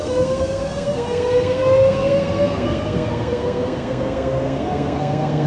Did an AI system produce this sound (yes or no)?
yes